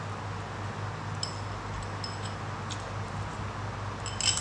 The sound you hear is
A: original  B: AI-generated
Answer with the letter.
A